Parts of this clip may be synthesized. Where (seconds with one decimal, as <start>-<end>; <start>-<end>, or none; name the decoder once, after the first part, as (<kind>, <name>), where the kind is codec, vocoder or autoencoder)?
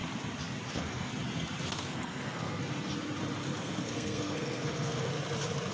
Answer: 0.7-1.1 (codec, SNAC); 1.7-2.6; 3.6-5.1